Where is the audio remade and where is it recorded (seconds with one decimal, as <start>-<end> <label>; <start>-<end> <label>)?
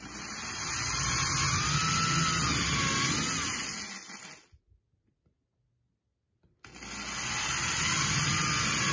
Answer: 0.0-8.9 recorded